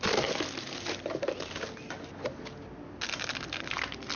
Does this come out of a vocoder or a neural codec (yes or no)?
no